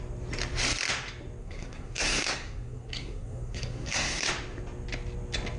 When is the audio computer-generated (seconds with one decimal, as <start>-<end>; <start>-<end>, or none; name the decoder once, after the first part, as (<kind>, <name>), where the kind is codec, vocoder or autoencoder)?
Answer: 1.4-4.3 (codec, SNAC)